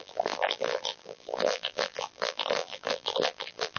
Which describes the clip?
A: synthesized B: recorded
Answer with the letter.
A